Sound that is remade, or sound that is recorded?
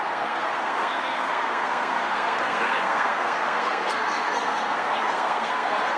remade